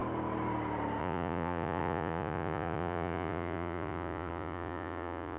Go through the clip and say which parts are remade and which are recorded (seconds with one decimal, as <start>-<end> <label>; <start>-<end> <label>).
0.0-1.0 recorded; 1.0-5.4 remade